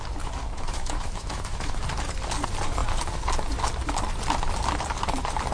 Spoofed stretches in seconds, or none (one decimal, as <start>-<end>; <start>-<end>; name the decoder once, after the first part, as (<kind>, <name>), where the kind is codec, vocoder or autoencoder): 0.4-1.8 (autoencoder, DAC-VAE)